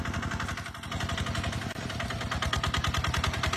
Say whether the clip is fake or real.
real